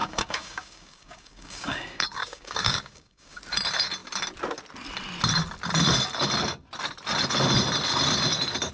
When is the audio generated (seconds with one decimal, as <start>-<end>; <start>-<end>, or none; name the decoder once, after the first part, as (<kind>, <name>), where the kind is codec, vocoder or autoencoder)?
0.0-3.4 (codec, DAC)